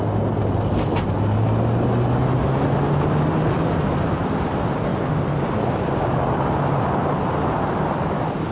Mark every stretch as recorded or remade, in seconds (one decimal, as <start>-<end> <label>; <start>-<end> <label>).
0.0-8.5 recorded